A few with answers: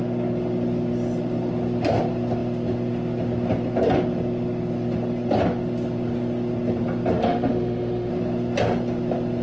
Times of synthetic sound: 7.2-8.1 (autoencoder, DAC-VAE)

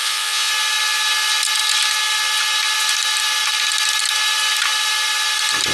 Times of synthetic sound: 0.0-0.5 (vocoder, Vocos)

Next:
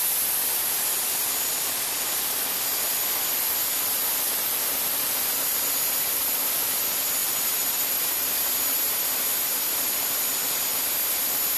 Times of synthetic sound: 7.2-7.9 (vocoder, BigVGAN v2)

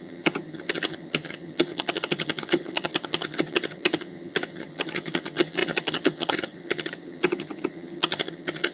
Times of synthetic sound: 0.0-8.7 (vocoder, HiFi-GAN)

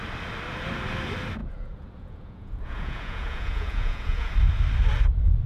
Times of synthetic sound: 1.4-4.3 (vocoder, Vocos)